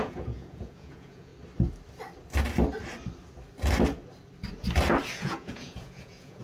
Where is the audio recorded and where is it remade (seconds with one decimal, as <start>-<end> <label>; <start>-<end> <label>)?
0.0-1.3 remade; 1.3-5.1 recorded; 5.1-6.4 remade